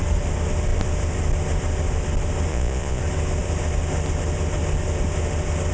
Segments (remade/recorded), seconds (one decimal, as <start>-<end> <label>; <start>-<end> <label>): 0.0-2.5 recorded; 2.5-3.0 remade; 3.0-5.7 recorded